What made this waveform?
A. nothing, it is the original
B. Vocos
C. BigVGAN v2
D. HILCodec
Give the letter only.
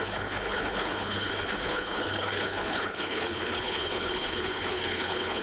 D